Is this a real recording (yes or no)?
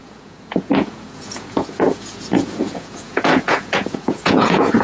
no